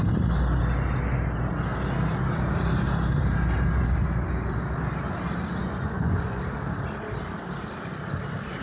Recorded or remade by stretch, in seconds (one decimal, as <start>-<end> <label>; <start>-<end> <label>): 0.0-5.6 recorded; 5.6-6.4 remade; 6.4-8.6 recorded